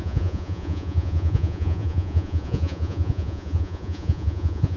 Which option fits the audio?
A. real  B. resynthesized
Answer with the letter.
B